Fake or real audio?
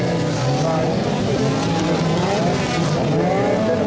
real